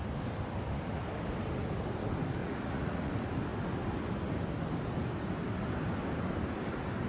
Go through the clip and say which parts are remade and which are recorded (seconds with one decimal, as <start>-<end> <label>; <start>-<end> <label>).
0.0-2.4 recorded; 2.4-3.1 remade; 3.1-7.1 recorded